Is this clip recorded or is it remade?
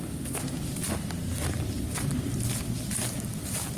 recorded